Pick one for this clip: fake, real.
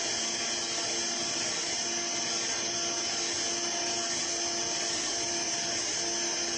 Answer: real